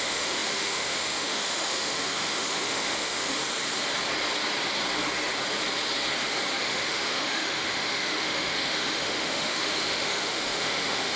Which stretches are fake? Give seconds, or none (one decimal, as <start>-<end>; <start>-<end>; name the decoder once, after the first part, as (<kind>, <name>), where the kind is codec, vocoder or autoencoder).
0.0-3.4 (autoencoder, DAC-VAE); 6.6-11.2